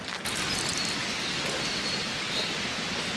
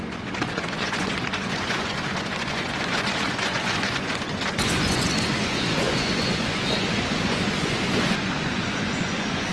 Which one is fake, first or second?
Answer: second